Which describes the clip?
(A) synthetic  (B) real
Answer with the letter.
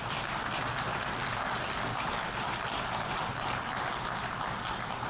B